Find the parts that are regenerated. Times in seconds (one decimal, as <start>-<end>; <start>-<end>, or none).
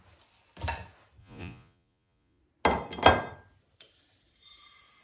1.2-2.4